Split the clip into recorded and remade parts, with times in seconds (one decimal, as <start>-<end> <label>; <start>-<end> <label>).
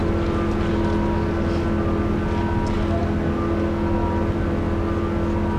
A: 0.0-5.6 recorded